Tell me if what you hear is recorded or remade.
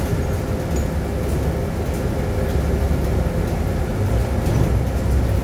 recorded